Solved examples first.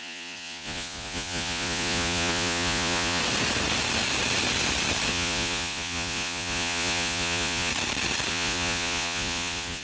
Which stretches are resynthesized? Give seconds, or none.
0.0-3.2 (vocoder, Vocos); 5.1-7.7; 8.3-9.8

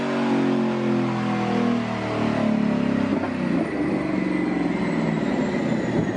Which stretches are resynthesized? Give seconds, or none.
none